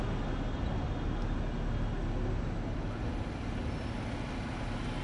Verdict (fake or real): real